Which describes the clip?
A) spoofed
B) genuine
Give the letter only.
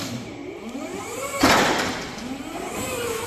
A